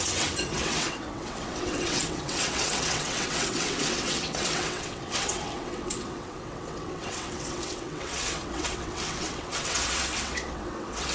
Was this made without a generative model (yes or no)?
no